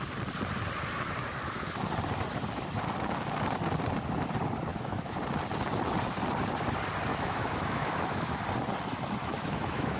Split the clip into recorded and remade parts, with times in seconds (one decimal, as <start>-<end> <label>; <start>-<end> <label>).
0.0-4.7 recorded; 4.7-5.2 remade; 5.2-7.1 recorded; 7.1-8.4 remade; 8.4-9.2 recorded; 9.2-10.0 remade